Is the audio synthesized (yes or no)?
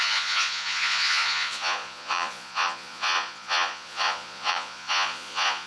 yes